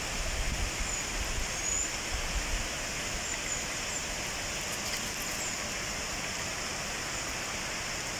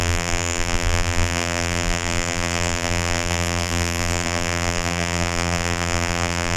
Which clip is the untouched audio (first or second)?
first